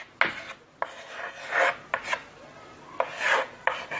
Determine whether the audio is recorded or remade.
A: recorded